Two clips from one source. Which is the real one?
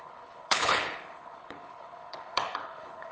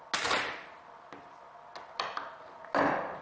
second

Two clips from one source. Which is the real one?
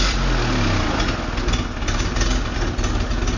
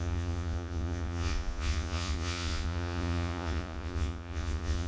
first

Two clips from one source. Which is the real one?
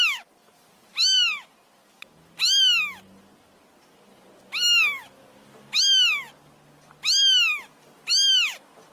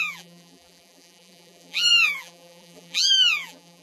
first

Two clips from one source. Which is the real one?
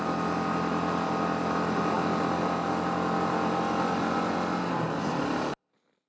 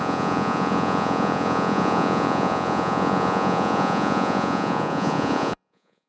first